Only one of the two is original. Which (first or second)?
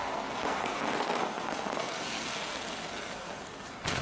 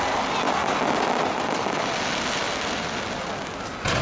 second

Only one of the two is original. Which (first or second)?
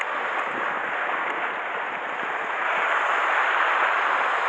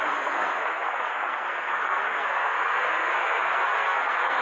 first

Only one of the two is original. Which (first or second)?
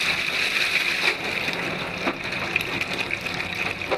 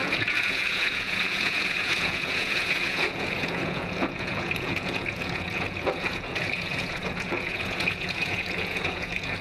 first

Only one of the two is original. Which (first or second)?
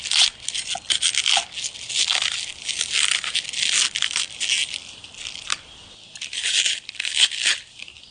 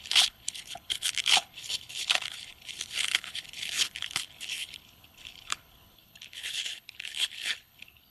first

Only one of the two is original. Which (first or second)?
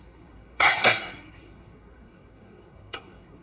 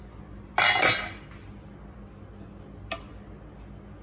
second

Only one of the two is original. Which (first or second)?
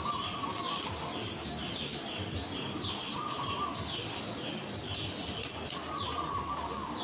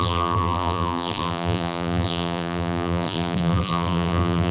first